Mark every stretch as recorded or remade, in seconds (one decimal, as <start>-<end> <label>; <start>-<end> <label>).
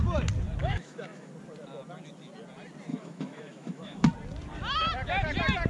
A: 0.0-0.6 recorded; 0.6-1.3 remade; 1.3-2.9 recorded; 2.9-4.1 remade; 4.1-5.7 recorded